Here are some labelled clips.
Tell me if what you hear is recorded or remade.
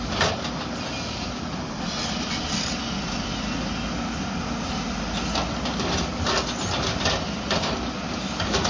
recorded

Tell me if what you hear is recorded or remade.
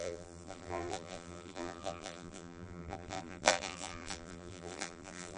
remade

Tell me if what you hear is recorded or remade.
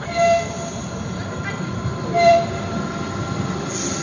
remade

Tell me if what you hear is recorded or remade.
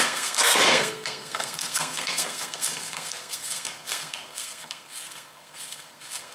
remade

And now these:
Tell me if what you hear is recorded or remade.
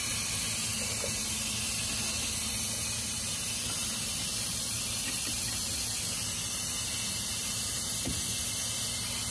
recorded